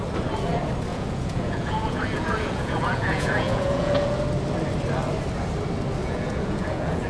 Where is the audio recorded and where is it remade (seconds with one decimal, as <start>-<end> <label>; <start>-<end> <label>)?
0.0-0.9 recorded; 0.9-4.1 remade; 4.1-6.0 recorded; 6.0-7.1 remade